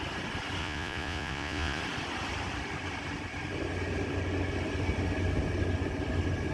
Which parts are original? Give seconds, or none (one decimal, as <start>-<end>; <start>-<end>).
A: 0.0-0.6; 1.8-6.5